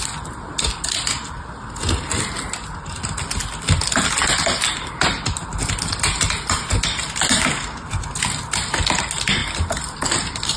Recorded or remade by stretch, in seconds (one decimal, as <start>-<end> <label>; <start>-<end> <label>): 0.0-10.6 recorded

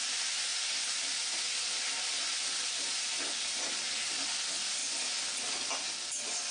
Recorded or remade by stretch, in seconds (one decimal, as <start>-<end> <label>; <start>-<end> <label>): 0.0-6.5 recorded

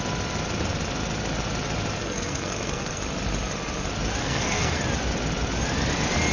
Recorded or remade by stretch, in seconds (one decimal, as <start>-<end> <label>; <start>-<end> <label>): 0.0-2.0 recorded; 2.0-3.0 remade; 3.0-4.2 recorded; 4.2-4.8 remade; 4.8-6.3 recorded

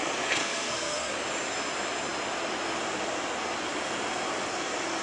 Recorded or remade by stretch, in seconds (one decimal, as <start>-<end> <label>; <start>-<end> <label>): 0.0-0.4 recorded; 0.4-1.1 remade; 1.1-5.0 recorded

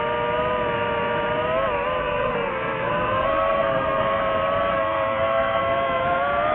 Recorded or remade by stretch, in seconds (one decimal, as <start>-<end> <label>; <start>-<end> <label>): 0.0-2.0 recorded; 2.0-4.2 remade; 4.2-4.7 recorded; 4.7-5.6 remade; 5.6-6.5 recorded

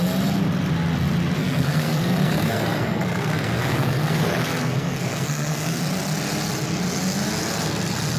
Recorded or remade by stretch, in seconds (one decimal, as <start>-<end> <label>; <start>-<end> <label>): 0.0-1.4 recorded; 1.4-5.8 remade; 5.8-8.2 recorded

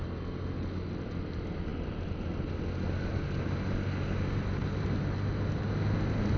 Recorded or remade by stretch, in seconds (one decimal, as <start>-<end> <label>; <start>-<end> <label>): 0.0-6.4 recorded